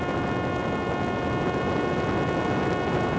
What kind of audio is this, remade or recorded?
recorded